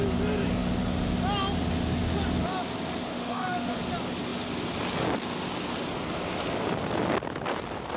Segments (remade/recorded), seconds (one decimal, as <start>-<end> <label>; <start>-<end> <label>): 0.0-3.1 recorded; 3.1-3.8 remade; 3.8-8.0 recorded